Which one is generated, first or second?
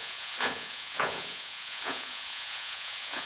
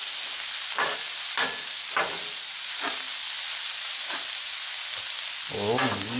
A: first